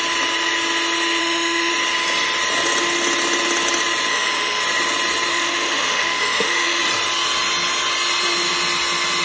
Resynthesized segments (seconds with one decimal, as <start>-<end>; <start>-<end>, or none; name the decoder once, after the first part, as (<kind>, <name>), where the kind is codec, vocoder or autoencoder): 1.2-1.7 (autoencoder, DAC-VAE); 4.1-4.6; 5.3-6.8